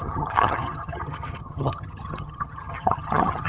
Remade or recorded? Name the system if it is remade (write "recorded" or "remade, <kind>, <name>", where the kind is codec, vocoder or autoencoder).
remade, vocoder, HiFi-GAN